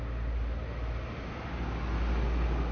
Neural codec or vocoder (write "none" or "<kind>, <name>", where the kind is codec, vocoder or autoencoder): none